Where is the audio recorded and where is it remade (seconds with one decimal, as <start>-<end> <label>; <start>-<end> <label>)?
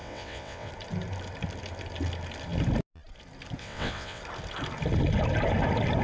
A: 0.0-0.7 remade; 0.7-3.6 recorded; 3.6-4.2 remade; 4.2-6.0 recorded